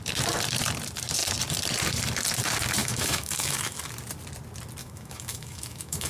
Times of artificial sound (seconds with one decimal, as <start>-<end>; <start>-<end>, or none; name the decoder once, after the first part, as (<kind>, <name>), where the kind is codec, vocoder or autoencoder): 2.8-3.8 (autoencoder, DAC-VAE); 4.8-6.1